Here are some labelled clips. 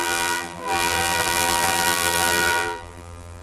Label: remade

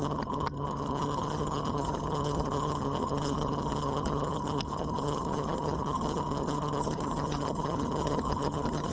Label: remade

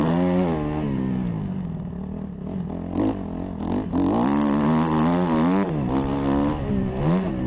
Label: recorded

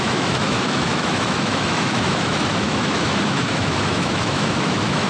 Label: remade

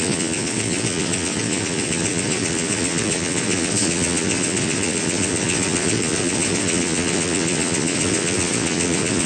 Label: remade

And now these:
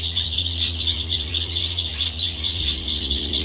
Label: remade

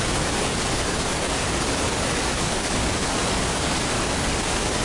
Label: remade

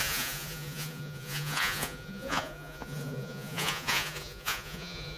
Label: remade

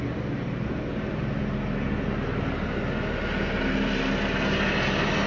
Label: recorded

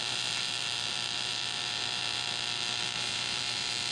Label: remade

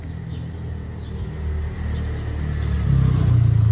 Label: recorded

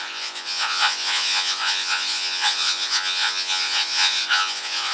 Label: remade